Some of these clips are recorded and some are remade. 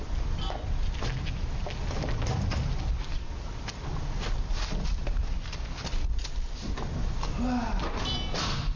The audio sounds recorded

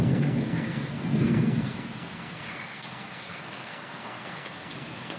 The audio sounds remade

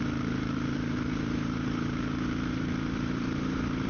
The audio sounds remade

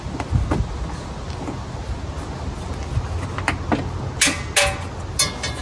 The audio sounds recorded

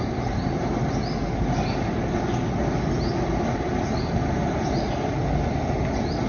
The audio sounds recorded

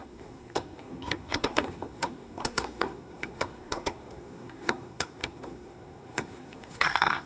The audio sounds remade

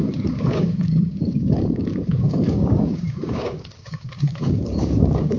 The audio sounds remade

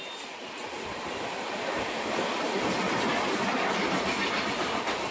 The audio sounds recorded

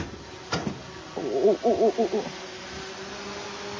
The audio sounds recorded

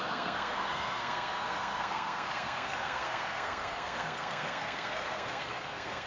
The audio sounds remade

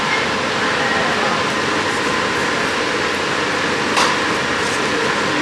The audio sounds recorded